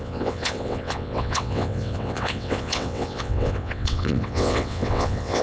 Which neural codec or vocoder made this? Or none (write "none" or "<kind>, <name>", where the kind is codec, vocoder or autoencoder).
vocoder, WaveNeXt